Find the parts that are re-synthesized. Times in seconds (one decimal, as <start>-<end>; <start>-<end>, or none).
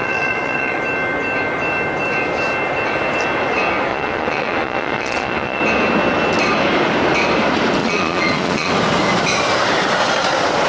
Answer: 0.0-0.8; 3.9-5.6; 7.8-8.7